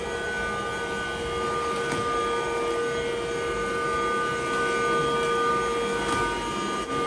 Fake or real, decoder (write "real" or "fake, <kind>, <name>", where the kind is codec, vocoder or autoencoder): real